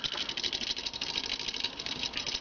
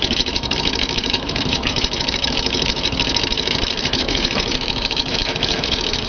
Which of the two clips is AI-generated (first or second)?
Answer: second